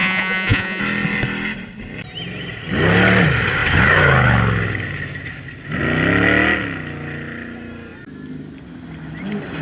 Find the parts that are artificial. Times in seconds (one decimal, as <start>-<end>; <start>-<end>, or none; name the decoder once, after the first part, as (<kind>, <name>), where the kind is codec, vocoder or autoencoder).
0.0-0.8 (vocoder, Vocos)